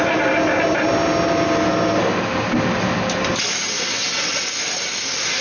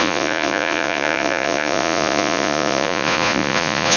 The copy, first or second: second